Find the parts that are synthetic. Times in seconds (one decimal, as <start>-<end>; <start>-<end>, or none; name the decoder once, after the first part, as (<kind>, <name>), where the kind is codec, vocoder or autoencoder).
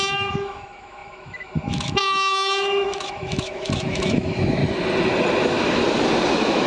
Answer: 0.0-4.6 (autoencoder, DAC-VAE); 6.3-6.7